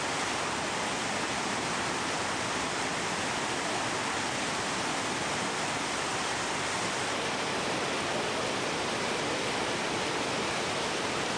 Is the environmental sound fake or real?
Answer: real